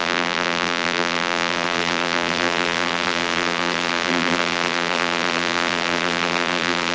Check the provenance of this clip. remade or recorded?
remade